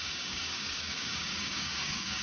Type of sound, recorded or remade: remade